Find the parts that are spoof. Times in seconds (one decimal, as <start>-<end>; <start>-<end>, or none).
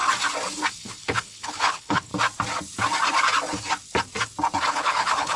0.7-2.1; 4.7-5.4